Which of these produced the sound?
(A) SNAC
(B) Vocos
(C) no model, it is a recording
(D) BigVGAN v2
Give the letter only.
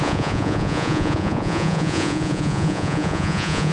B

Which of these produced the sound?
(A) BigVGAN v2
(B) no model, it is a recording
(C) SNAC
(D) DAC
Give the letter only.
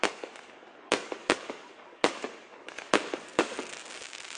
D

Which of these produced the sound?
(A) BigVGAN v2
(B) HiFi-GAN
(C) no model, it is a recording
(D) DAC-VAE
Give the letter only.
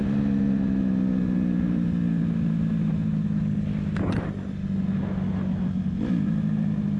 C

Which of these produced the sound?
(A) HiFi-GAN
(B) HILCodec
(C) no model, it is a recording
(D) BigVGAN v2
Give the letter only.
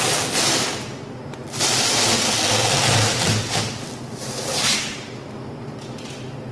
C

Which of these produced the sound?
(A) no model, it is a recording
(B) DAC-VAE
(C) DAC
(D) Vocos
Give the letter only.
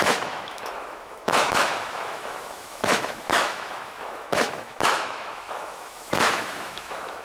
B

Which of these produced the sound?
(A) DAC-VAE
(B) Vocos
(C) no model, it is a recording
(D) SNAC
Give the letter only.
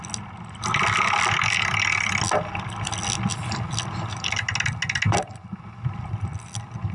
C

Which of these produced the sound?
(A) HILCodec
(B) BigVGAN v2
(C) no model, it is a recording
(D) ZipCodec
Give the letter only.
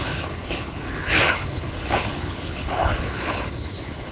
A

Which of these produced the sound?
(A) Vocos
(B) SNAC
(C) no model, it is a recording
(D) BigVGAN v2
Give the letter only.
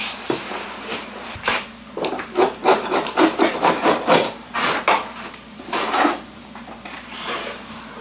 D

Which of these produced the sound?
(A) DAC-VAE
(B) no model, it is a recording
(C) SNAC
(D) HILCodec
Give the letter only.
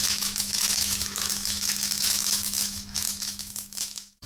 A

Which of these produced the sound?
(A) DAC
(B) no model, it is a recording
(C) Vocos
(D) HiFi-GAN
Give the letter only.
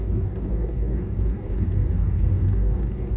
A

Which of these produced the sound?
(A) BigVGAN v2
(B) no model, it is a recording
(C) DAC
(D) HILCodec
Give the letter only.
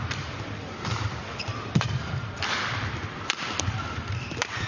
A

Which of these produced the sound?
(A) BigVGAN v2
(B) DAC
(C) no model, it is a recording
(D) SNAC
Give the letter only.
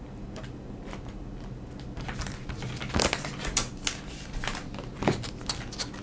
C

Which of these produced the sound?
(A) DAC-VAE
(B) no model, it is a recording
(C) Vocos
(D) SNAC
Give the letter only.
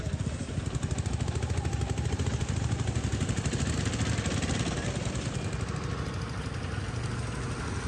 B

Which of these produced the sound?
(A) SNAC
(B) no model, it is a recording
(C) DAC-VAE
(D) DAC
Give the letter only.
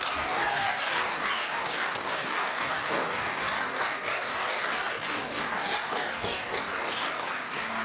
D